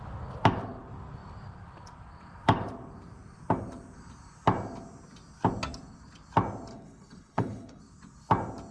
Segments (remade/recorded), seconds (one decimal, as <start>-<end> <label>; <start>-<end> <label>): 0.0-6.7 recorded; 6.7-7.8 remade; 7.8-8.7 recorded